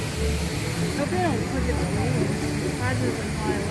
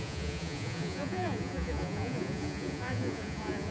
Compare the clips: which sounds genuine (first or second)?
first